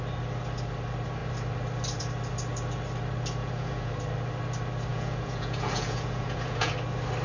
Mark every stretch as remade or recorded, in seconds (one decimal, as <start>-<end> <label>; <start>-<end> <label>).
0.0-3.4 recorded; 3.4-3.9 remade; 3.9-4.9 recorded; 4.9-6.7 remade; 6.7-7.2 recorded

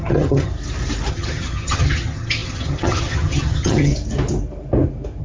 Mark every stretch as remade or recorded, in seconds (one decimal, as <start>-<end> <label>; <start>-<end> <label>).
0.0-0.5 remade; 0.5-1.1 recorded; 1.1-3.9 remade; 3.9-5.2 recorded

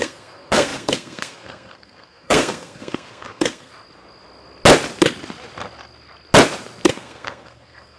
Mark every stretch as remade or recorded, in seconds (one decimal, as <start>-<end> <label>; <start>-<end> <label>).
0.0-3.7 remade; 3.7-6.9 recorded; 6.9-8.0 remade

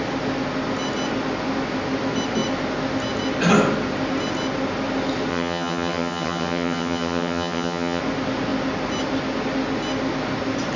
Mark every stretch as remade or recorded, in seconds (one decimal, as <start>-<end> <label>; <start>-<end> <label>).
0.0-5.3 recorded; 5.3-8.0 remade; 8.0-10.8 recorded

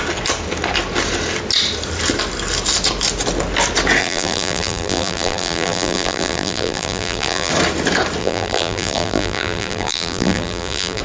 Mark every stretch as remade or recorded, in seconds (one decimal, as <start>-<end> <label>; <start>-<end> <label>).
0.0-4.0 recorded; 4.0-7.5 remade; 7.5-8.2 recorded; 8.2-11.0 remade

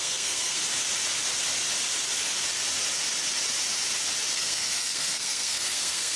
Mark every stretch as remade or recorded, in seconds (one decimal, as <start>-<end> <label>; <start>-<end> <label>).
0.0-0.6 remade; 0.6-4.3 recorded; 4.3-6.2 remade

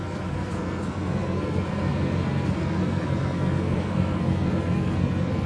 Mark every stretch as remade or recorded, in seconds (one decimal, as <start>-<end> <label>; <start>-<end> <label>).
0.0-5.5 remade